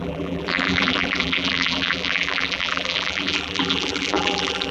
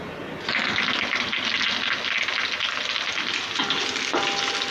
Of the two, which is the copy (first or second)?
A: first